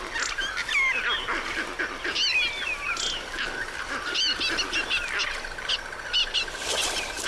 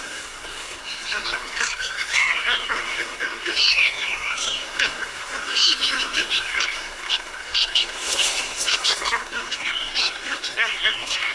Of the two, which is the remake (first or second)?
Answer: second